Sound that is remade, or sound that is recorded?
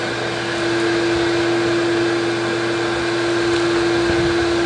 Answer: recorded